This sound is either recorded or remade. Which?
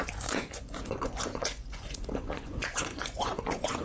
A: remade